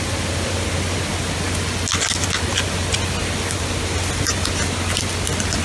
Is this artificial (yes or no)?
no